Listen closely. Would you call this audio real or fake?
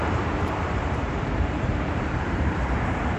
fake